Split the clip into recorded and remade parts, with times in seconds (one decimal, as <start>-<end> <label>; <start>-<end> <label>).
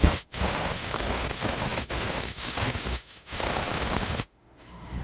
0.0-5.0 remade